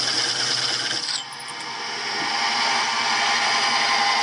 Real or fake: real